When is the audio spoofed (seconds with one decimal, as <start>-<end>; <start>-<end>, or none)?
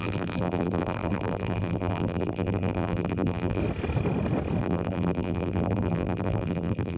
0.0-3.6; 4.6-7.0